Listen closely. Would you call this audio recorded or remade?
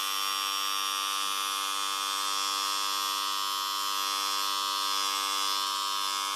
recorded